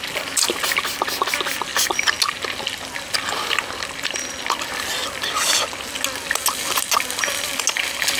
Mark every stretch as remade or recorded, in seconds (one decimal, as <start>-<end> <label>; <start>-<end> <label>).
0.0-8.2 recorded